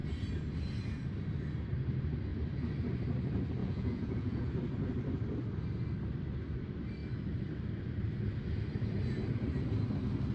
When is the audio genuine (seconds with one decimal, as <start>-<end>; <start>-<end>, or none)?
0.0-3.6; 4.5-10.3